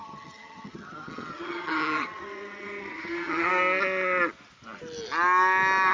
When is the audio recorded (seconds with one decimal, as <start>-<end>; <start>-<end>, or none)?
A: 3.5-5.9